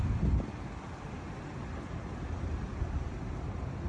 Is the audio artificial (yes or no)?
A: no